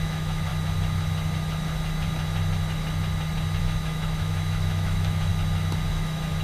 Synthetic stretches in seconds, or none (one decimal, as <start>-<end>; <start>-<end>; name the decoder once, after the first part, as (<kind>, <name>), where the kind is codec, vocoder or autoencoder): 0.0-0.5 (autoencoder, DAC-VAE); 3.6-5.3; 5.9-6.4